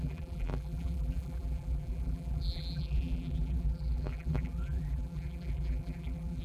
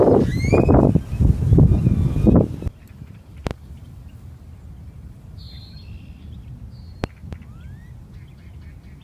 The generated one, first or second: first